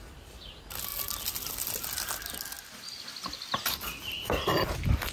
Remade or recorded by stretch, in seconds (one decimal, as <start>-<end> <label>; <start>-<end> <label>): 0.0-5.1 recorded